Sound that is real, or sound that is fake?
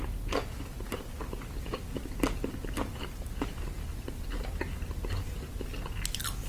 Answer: real